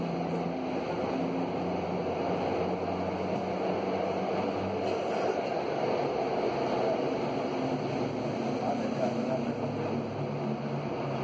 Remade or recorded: recorded